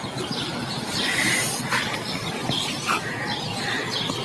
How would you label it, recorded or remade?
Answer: recorded